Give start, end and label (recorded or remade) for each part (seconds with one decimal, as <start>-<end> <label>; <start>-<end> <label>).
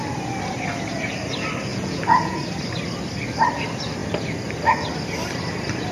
0.0-1.7 recorded; 1.7-2.4 remade; 2.4-5.9 recorded